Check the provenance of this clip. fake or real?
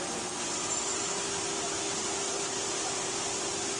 real